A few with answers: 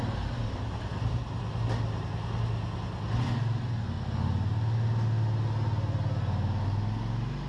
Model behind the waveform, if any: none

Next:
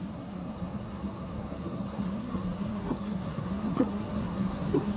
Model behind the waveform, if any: codec, SNAC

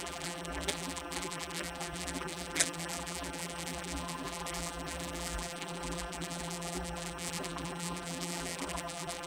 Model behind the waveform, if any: vocoder, BigVGAN v2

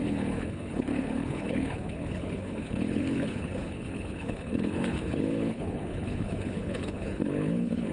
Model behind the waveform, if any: codec, HILCodec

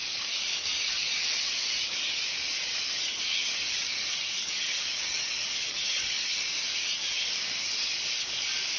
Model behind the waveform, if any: codec, DAC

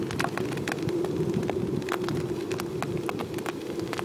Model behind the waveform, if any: none